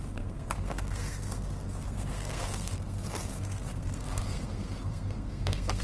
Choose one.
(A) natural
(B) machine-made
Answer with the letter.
B